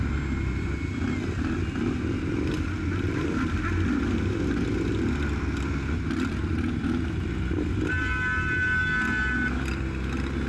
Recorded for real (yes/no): yes